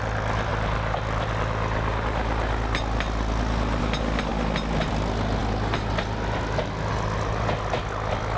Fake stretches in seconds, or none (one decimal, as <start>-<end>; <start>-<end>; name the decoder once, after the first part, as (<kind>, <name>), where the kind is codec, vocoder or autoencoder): none